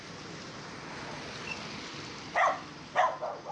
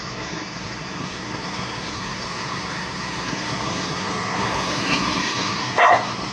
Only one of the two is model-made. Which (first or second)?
second